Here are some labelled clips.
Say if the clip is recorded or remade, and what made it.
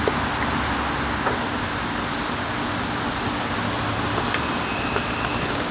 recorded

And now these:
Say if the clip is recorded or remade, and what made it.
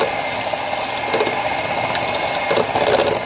recorded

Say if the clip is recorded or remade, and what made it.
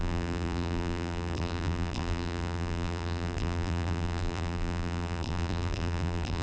remade, vocoder, BigVGAN v2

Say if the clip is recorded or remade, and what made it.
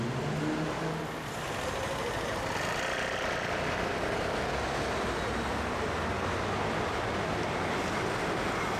recorded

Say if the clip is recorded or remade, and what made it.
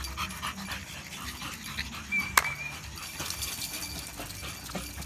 recorded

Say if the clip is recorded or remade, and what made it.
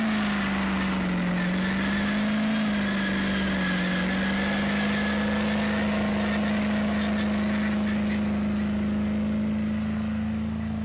recorded